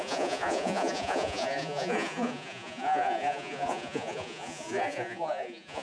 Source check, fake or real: fake